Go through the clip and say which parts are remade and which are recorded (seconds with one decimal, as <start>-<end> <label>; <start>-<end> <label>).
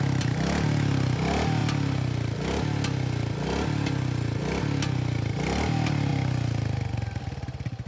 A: 0.0-7.9 recorded